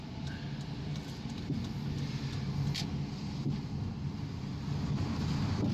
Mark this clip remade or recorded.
recorded